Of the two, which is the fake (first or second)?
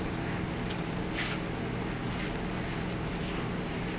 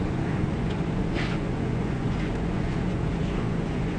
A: second